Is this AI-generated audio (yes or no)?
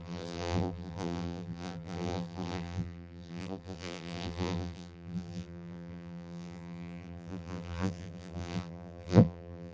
yes